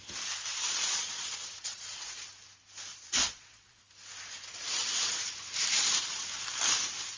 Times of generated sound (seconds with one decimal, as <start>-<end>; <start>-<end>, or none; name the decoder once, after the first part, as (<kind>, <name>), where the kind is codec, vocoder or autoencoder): 0.5-2.3 (vocoder, Vocos); 2.9-3.8